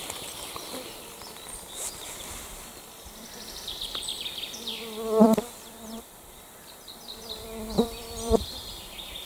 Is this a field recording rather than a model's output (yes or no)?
no